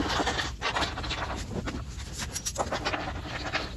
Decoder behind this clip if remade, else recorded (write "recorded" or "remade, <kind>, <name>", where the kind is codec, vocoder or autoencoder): recorded